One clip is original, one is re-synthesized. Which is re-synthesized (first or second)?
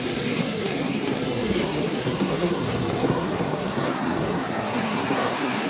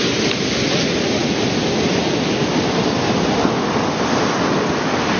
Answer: first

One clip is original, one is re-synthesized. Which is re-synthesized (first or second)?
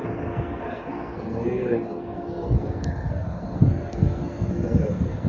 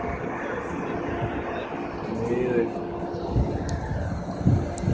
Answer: first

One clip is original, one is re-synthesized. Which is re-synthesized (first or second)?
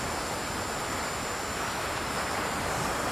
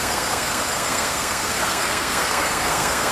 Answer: second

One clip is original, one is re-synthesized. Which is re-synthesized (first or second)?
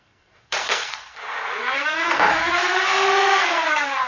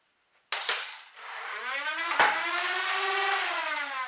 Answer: first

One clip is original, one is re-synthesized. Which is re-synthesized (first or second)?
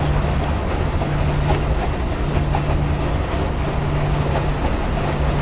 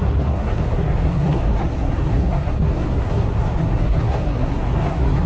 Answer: second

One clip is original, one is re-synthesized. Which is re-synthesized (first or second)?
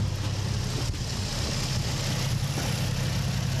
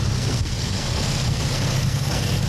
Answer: second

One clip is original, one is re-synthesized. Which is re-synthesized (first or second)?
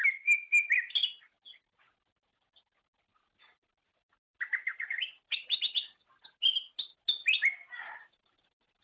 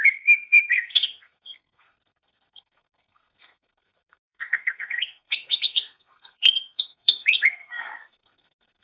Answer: second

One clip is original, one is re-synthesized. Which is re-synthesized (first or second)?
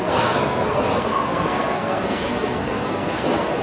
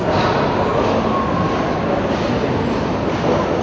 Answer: first